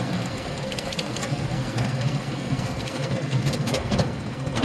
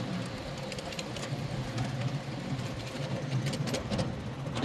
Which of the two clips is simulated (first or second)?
first